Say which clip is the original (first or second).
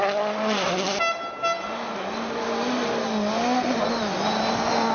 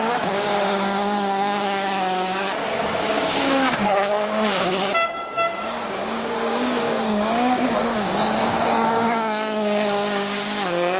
first